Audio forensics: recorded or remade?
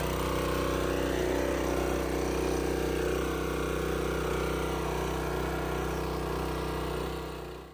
recorded